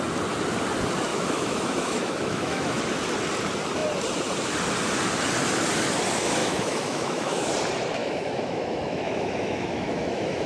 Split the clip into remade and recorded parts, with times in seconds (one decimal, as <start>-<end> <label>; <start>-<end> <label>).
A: 0.0-1.1 recorded; 1.1-2.8 remade; 2.8-6.4 recorded; 6.4-7.5 remade; 7.5-8.0 recorded; 8.0-10.5 remade